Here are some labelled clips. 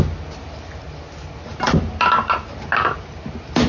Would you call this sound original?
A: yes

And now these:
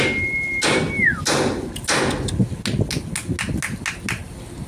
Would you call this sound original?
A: yes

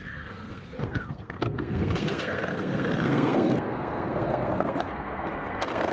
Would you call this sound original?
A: no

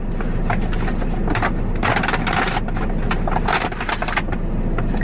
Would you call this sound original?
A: yes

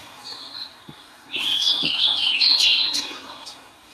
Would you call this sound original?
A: no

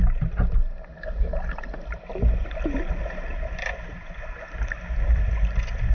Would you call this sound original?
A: yes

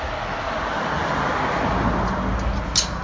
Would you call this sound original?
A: yes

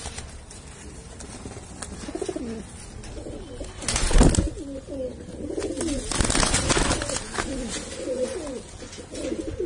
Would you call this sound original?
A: yes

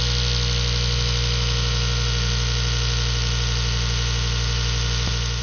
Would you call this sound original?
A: yes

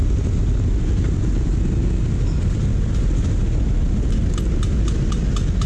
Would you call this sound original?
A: yes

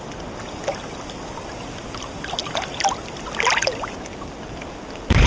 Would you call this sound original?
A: yes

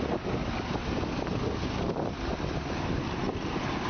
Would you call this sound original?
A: yes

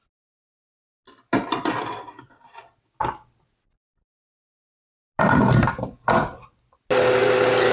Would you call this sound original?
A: yes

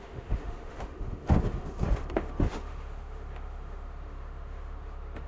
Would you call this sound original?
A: no